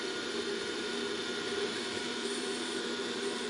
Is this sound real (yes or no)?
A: no